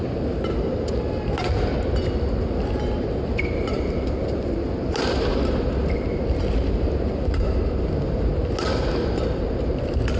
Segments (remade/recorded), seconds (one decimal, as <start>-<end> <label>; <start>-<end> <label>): 0.0-9.0 recorded; 9.0-10.2 remade